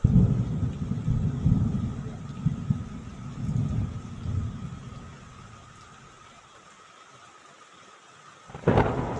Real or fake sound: real